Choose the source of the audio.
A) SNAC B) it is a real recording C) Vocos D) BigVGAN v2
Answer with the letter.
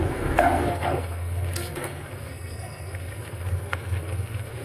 A